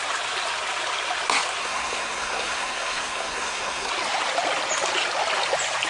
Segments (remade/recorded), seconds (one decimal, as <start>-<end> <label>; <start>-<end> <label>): 0.0-1.6 recorded; 1.6-3.9 remade; 3.9-5.9 recorded